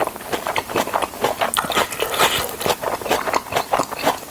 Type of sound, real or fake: real